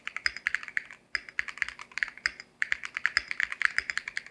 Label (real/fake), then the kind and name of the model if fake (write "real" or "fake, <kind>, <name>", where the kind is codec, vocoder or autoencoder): real